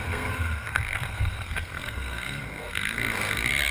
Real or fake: fake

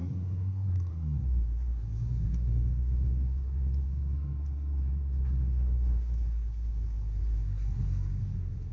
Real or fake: fake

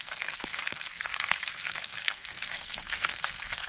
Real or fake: fake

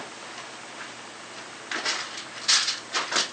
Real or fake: real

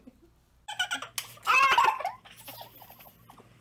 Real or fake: real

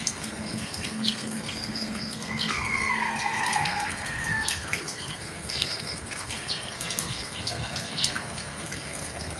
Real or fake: fake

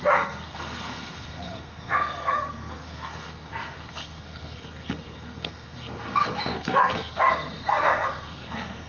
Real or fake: fake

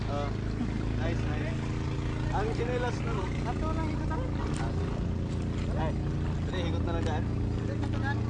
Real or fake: real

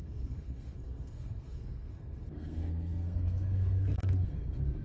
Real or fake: fake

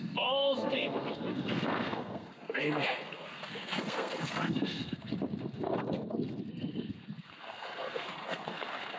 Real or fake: fake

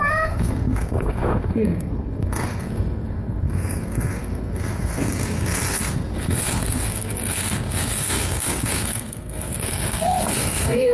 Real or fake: fake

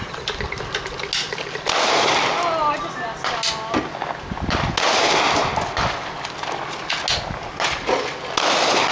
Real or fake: real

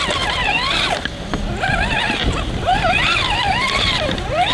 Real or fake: real